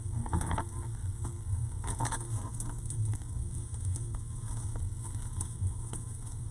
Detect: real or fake fake